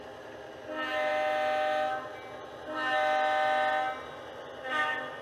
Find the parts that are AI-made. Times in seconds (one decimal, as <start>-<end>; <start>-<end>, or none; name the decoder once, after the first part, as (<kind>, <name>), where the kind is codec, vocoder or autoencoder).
none